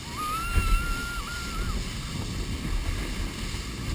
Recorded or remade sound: recorded